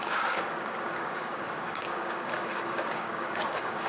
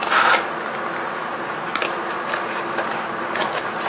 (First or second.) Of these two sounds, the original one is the second